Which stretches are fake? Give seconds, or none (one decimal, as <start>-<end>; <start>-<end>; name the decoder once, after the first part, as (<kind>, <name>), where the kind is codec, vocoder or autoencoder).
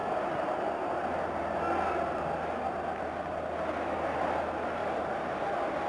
4.8-5.3 (vocoder, BigVGAN v2)